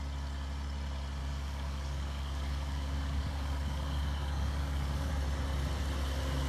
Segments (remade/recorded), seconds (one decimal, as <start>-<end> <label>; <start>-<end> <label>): 0.0-1.2 recorded; 1.2-5.1 remade; 5.1-6.5 recorded